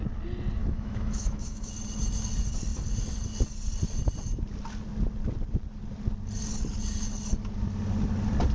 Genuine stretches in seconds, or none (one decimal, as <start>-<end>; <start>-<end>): 0.0-0.6; 1.7-8.5